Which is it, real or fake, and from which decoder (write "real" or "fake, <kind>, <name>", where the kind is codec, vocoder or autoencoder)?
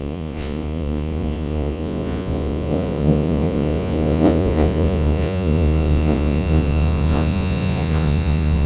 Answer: fake, vocoder, Vocos